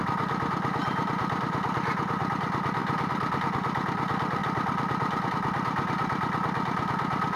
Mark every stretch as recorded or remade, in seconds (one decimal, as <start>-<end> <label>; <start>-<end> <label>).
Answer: 0.0-0.8 recorded; 0.8-2.3 remade; 2.3-2.8 recorded; 2.8-3.4 remade; 3.4-4.4 recorded; 4.4-5.3 remade; 5.3-7.4 recorded